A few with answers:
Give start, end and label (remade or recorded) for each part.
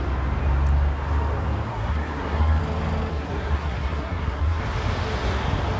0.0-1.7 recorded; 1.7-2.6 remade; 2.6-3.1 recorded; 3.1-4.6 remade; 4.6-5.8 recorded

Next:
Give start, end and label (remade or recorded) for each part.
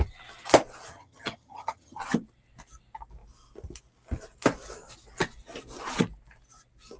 0.0-0.9 recorded; 0.9-2.0 remade; 2.0-7.0 recorded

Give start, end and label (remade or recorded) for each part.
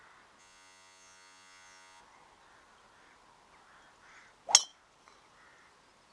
0.0-0.4 recorded; 0.4-2.0 remade; 2.0-6.1 recorded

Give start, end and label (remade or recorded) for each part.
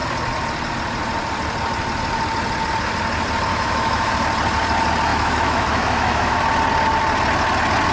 0.0-3.5 recorded; 3.5-4.1 remade; 4.1-5.1 recorded; 5.1-6.4 remade; 6.4-7.9 recorded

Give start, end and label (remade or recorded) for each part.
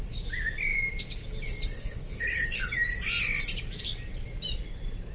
0.0-1.8 recorded; 1.8-2.7 remade; 2.7-5.1 recorded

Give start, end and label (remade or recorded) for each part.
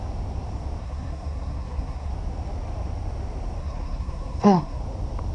0.0-0.8 recorded; 0.8-2.1 remade; 2.1-3.6 recorded; 3.6-4.8 remade; 4.8-5.3 recorded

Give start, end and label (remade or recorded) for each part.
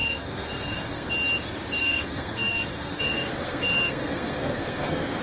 0.0-1.1 remade; 1.1-1.8 recorded; 1.8-5.2 remade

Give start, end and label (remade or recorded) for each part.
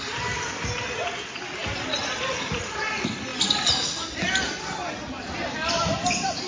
0.0-1.6 recorded; 1.6-2.8 remade; 2.8-3.3 recorded; 3.3-6.5 remade